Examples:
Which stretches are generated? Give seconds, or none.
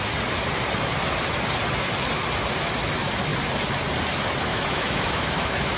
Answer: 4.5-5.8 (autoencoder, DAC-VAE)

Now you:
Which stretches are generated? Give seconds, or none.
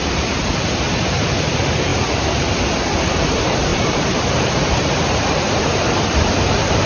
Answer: 0.0-1.9 (vocoder, BigVGAN v2); 3.1-6.9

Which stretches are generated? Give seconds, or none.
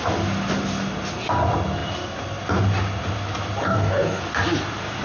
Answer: 3.6-4.2 (codec, DAC)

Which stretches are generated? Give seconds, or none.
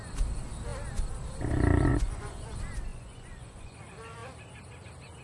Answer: 1.9-2.5 (vocoder, Vocos); 2.9-3.8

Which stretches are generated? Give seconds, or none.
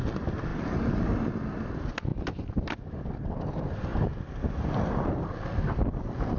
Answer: 0.0-2.1 (vocoder, BigVGAN v2); 2.9-3.9; 5.8-6.4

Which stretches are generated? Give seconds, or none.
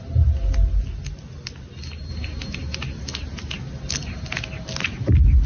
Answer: none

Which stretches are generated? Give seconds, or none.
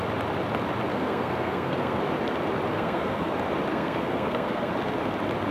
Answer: 0.9-2.0 (codec, SNAC); 2.7-3.3; 3.7-4.7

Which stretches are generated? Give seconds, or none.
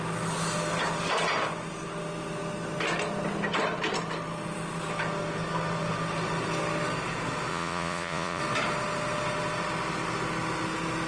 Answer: 7.5-8.4 (vocoder, Vocos)